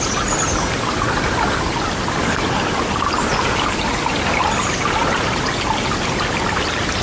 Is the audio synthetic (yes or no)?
no